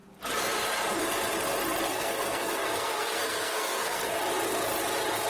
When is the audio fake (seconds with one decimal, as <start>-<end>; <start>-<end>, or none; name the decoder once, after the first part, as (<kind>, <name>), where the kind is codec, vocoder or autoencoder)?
1.9-4.2 (codec, SNAC)